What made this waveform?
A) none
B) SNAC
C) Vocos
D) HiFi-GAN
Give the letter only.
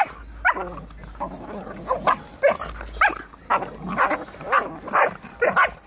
A